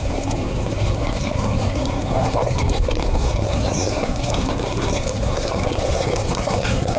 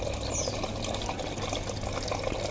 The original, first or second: second